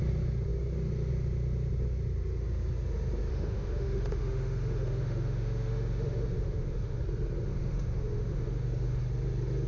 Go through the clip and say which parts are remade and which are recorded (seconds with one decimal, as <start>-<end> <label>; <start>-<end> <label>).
0.0-3.3 recorded; 3.3-7.0 remade; 7.0-7.5 recorded; 7.5-9.0 remade; 9.0-9.7 recorded